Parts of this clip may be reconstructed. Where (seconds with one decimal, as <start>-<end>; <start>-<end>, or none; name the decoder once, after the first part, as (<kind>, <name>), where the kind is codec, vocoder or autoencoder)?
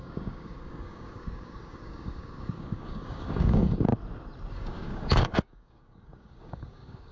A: 0.0-3.9 (codec, DAC); 4.5-7.1